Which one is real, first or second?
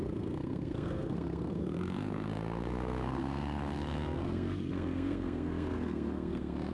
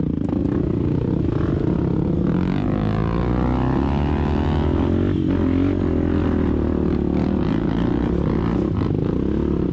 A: second